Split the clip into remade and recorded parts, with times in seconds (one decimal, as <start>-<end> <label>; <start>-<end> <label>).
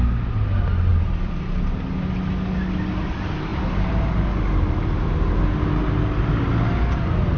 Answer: 0.0-7.4 recorded